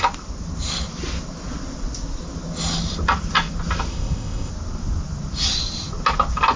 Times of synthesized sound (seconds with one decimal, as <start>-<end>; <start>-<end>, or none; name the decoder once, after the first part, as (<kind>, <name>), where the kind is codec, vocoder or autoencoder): 3.9-4.5 (codec, ZipCodec)